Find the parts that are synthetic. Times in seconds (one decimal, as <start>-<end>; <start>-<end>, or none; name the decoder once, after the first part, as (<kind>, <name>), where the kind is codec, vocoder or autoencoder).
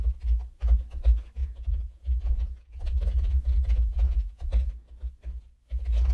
1.4-4.7 (vocoder, Vocos)